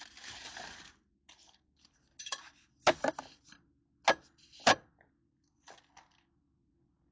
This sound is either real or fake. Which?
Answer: real